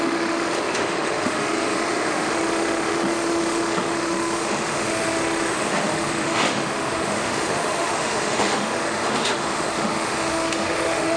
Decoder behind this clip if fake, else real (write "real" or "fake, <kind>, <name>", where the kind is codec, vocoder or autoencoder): fake, autoencoder, DAC-VAE